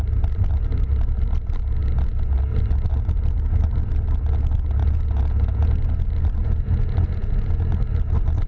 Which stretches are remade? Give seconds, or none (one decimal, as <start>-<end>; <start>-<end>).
4.8-5.7; 6.4-7.6